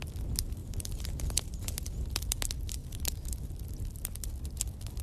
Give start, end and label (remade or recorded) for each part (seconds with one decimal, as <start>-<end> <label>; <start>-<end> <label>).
0.0-0.6 recorded; 0.6-1.6 remade; 1.6-2.8 recorded; 2.8-3.4 remade; 3.4-5.0 recorded